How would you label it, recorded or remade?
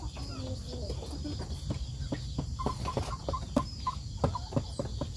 recorded